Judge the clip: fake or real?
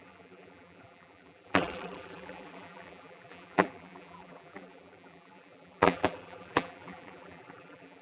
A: fake